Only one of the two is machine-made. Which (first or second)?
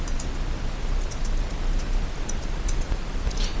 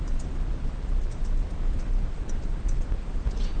second